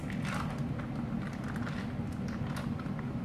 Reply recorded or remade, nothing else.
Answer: recorded